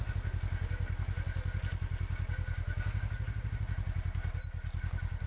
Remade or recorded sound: recorded